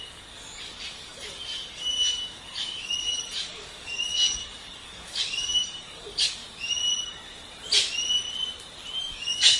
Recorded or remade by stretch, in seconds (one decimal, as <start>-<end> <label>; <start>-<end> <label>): 0.0-6.4 remade; 6.4-9.0 recorded; 9.0-9.6 remade

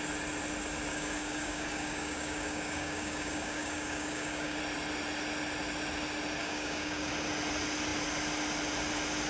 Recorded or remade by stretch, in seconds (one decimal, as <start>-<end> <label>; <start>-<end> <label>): 0.0-0.9 recorded; 0.9-4.6 remade; 4.6-6.4 recorded; 6.4-7.1 remade; 7.1-9.3 recorded

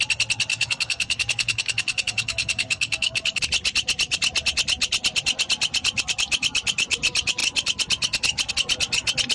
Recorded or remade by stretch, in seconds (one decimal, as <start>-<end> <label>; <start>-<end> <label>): 0.0-0.5 recorded; 0.5-3.4 remade; 3.4-9.3 recorded